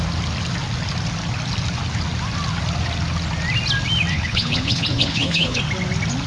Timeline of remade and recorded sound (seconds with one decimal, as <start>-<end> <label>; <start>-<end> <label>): 0.0-4.1 recorded; 4.1-5.6 remade; 5.6-6.3 recorded